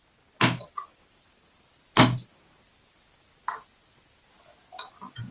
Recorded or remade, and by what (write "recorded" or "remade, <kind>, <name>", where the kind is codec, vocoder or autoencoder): recorded